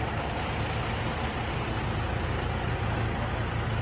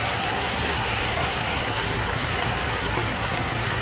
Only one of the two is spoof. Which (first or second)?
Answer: second